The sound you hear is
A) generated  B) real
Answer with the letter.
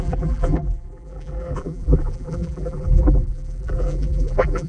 A